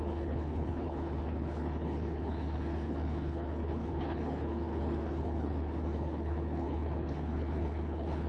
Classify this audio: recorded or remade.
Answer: remade